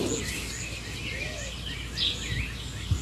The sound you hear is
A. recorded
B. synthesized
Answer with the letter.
A